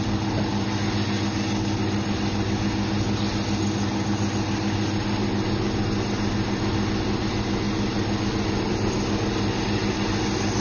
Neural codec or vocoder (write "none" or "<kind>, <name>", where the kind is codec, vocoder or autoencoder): none